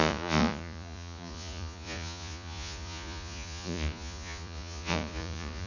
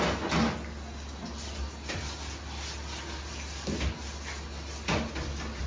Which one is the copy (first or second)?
first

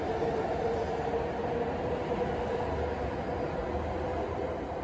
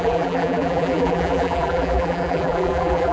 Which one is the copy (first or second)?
second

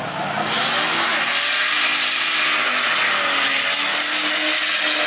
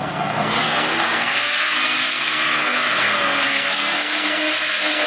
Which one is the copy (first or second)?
second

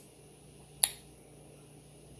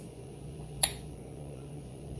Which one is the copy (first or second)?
second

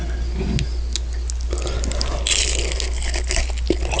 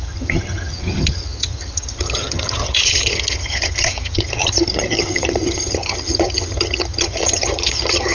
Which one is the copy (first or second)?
second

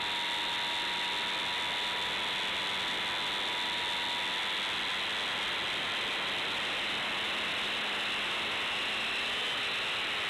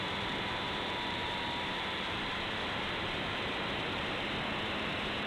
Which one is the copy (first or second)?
second